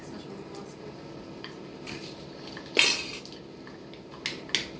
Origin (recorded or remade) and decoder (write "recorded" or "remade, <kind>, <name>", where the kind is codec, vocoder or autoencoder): recorded